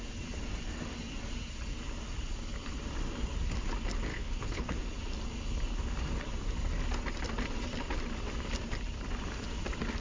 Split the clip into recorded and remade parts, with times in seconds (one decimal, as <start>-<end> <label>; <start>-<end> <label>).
0.0-4.1 recorded; 4.1-4.8 remade; 4.8-10.0 recorded